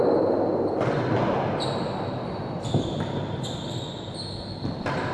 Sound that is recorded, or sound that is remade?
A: recorded